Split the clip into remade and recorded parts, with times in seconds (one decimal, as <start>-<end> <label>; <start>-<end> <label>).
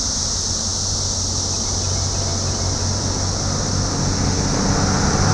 0.0-5.3 recorded